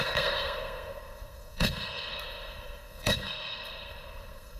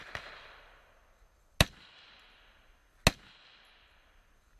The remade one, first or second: first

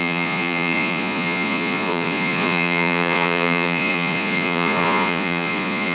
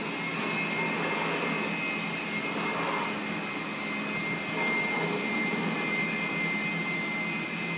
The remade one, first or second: first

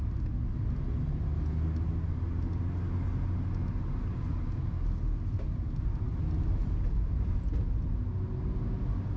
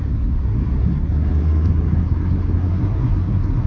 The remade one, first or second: second